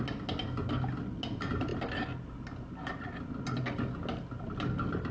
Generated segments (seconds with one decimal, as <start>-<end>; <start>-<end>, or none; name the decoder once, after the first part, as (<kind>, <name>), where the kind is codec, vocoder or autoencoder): none